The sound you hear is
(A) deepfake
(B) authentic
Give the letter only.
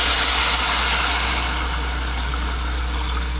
B